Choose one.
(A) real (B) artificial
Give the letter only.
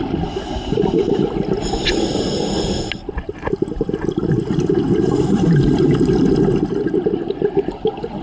A